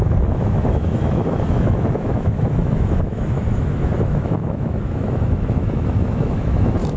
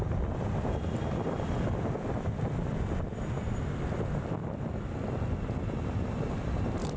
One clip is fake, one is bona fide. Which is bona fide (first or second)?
second